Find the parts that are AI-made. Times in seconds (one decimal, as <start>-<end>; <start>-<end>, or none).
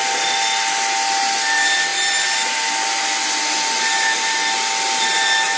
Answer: none